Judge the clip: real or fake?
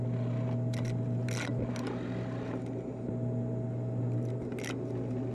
real